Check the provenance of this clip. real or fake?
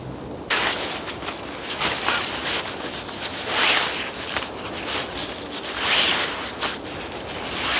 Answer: real